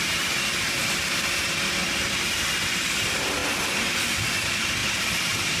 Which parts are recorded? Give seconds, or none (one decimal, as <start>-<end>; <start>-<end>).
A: 0.0-4.8

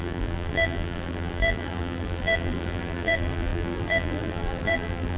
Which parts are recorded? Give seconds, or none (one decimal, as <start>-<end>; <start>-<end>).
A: none

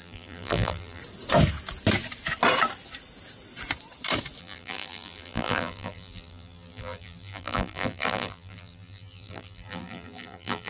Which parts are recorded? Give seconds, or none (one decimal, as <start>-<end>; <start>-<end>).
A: 1.0-4.4

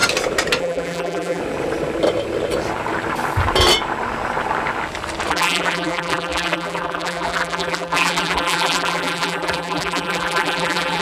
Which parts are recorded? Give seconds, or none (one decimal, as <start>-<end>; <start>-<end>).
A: 0.0-0.6; 1.4-5.3

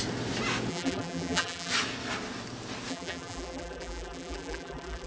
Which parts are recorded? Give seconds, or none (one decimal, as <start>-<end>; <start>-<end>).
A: 0.0-0.7; 1.7-2.9